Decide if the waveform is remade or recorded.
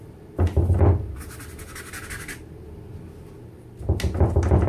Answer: recorded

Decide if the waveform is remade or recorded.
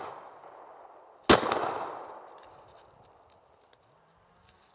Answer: recorded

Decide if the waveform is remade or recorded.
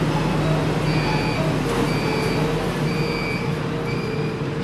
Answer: recorded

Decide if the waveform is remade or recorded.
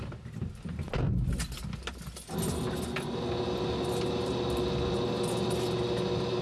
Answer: recorded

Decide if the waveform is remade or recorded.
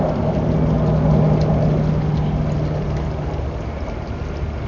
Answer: recorded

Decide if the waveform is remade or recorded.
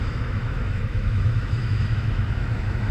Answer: remade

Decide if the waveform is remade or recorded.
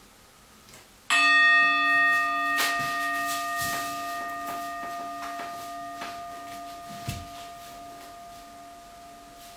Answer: recorded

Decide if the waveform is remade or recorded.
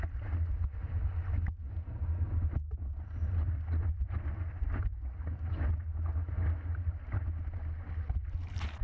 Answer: recorded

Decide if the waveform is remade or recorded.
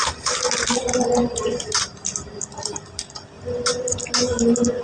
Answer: recorded